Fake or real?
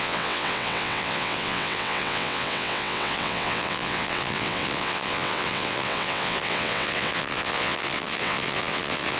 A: fake